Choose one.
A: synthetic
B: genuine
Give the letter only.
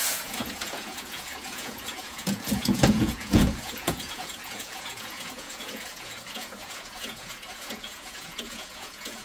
A